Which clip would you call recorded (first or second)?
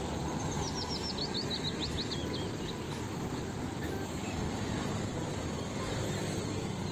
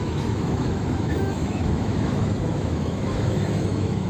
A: first